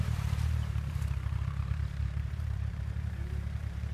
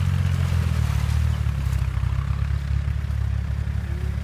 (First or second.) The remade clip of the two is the first